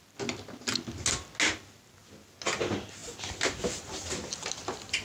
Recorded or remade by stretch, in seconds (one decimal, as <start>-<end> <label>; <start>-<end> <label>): 0.0-5.0 recorded